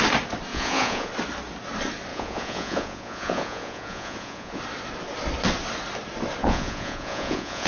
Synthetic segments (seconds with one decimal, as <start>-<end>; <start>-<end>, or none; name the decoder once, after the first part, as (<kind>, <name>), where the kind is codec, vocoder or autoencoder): 0.5-1.1 (vocoder, Vocos); 2.1-4.6; 6.4-7.7